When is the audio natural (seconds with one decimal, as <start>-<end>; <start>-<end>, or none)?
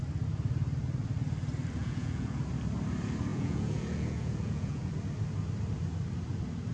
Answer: 0.0-1.8; 2.4-3.3; 4.9-6.7